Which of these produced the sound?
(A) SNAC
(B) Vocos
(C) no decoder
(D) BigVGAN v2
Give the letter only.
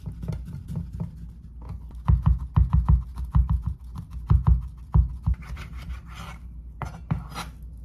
C